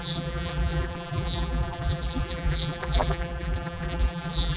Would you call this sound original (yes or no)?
no